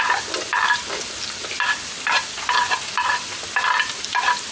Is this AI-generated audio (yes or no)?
no